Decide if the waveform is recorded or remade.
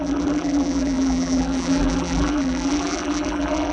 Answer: remade